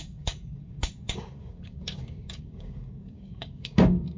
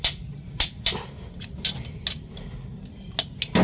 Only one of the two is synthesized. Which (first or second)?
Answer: first